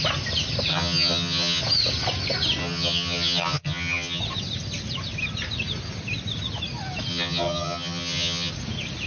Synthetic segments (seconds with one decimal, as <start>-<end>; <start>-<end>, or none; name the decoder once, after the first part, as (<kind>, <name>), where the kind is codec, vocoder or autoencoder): 0.7-1.6 (vocoder, HiFi-GAN); 2.6-4.2; 7.1-8.5